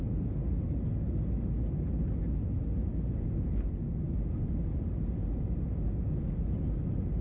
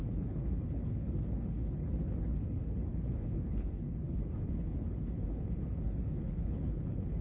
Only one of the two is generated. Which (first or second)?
second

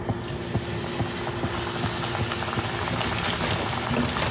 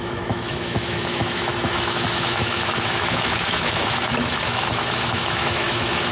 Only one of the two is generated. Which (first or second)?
second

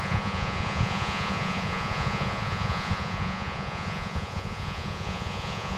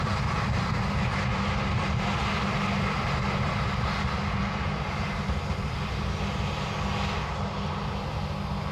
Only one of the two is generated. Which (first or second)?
first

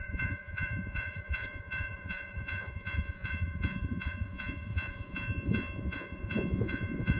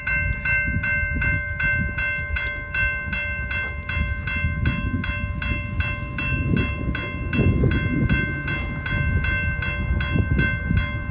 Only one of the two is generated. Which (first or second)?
first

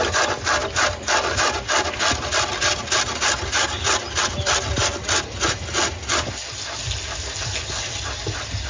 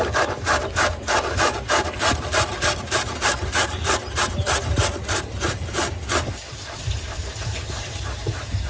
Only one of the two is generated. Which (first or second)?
second